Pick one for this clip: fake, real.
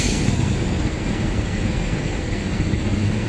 fake